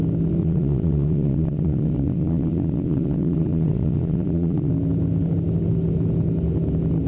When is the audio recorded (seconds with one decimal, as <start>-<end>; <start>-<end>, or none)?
0.0-0.4; 4.7-7.1